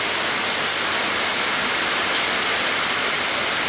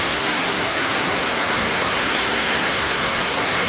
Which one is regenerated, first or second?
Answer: second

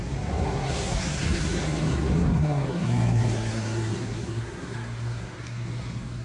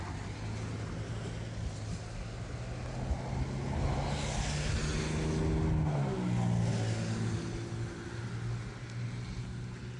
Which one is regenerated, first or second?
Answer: first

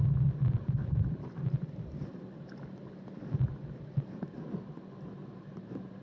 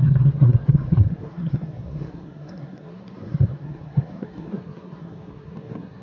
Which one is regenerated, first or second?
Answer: second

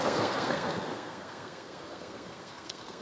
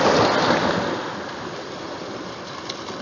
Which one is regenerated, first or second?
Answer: first